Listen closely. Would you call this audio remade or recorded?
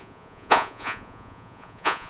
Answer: remade